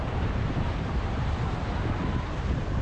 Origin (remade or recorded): remade